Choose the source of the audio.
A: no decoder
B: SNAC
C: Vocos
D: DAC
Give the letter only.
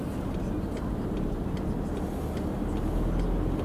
A